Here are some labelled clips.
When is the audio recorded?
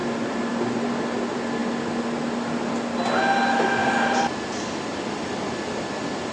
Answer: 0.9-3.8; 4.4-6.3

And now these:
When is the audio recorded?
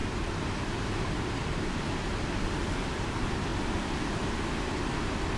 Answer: 0.0-5.4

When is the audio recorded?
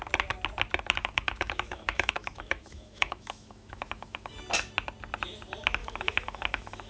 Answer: 0.0-1.0; 4.3-5.8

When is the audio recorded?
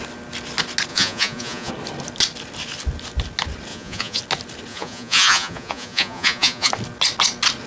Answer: 0.0-0.9; 1.7-3.7; 4.2-4.7; 6.7-7.7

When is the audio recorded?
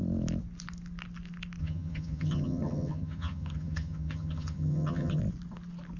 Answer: 0.0-1.6; 5.2-6.0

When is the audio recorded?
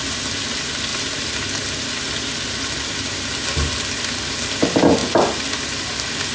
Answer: 0.0-0.9; 1.4-6.3